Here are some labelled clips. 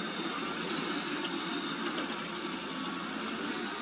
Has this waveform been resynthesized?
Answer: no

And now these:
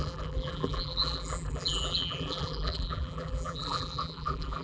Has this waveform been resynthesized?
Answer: yes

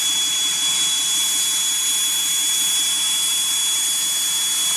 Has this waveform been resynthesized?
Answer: no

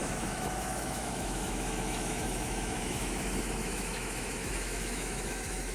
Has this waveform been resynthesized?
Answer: yes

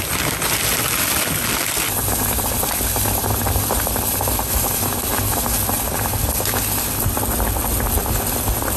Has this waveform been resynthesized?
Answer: no